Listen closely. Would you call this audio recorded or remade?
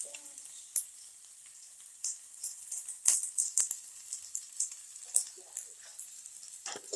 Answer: recorded